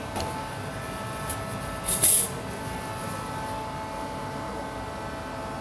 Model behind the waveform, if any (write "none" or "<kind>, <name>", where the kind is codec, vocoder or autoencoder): none